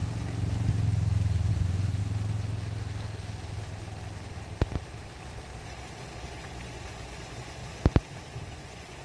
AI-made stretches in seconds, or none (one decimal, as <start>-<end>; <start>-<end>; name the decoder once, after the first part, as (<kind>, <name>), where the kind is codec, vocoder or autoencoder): 1.5-2.0 (vocoder, Vocos); 6.3-7.6; 8.5-9.0